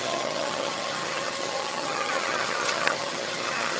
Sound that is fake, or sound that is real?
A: fake